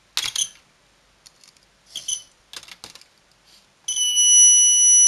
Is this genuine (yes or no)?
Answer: yes